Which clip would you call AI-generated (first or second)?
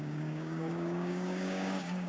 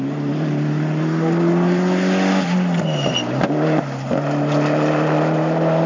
first